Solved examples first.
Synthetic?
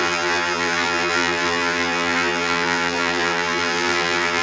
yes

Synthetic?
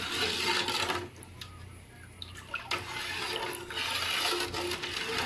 no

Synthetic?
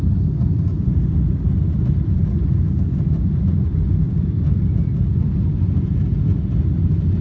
no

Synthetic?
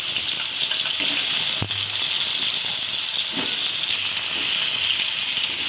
no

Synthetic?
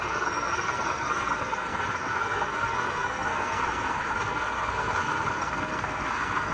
yes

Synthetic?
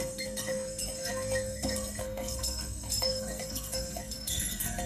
yes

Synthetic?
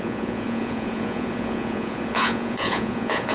yes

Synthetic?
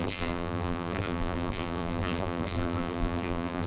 yes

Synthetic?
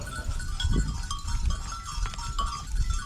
no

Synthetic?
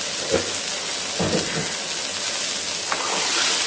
no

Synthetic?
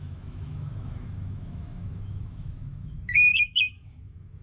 yes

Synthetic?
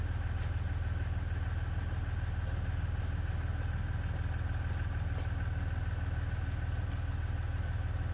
no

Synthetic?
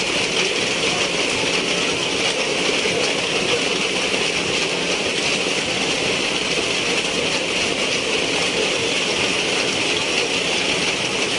no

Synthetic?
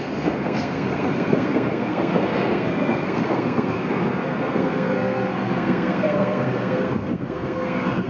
yes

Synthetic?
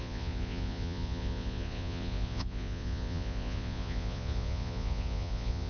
yes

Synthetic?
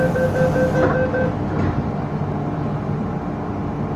no